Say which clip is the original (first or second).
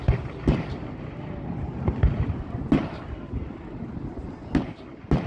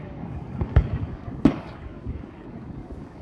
first